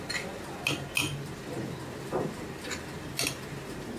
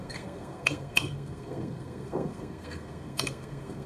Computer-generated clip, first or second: second